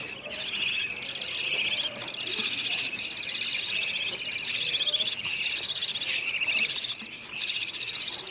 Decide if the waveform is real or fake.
real